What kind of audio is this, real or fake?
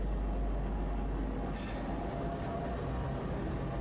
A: real